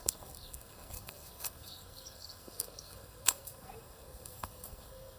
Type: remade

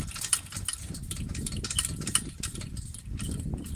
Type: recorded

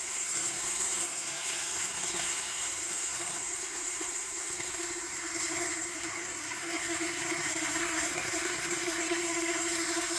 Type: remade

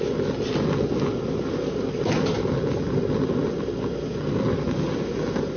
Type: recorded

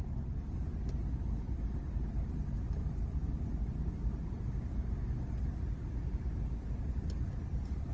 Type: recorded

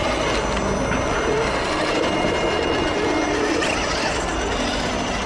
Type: recorded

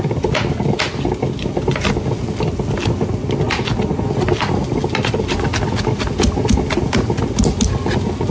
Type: recorded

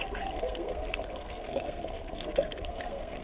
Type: remade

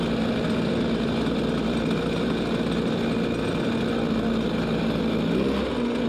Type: recorded